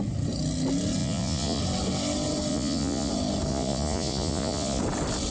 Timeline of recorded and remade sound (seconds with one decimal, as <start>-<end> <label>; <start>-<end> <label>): 0.0-1.0 recorded; 1.0-1.6 remade; 1.6-2.5 recorded; 2.5-3.1 remade; 3.1-3.5 recorded; 3.5-4.8 remade; 4.8-5.3 recorded